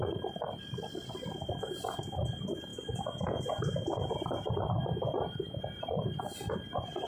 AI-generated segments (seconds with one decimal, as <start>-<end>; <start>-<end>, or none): none